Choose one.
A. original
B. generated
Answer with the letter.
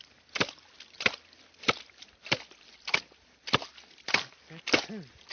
A